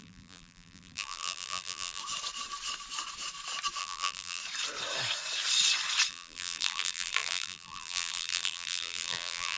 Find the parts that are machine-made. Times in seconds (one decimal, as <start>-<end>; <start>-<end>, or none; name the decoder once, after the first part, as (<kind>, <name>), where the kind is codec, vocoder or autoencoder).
0.0-2.0 (vocoder, BigVGAN v2); 3.8-4.4; 6.1-9.6